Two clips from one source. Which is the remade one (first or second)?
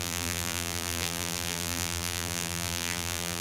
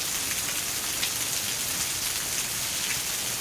first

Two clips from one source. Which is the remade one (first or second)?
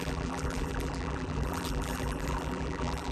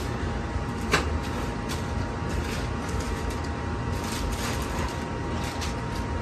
first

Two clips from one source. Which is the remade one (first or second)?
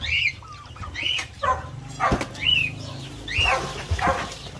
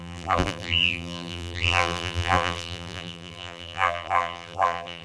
second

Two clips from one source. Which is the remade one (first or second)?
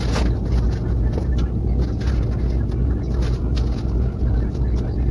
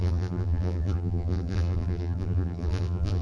second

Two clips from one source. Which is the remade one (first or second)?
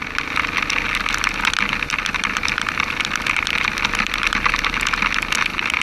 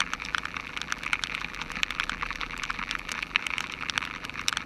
second